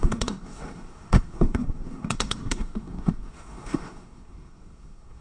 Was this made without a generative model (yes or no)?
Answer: no